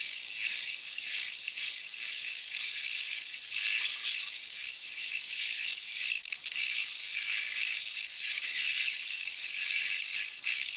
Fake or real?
fake